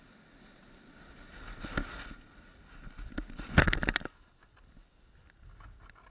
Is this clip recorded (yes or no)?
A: yes